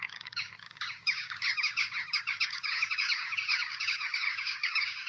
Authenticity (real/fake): fake